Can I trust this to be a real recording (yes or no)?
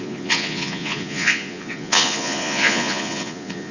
no